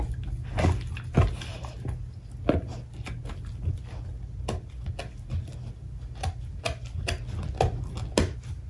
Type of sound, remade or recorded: recorded